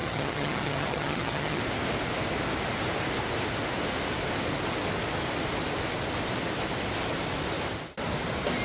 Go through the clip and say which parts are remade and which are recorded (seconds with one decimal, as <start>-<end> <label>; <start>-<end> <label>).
0.0-1.6 remade; 1.6-8.6 recorded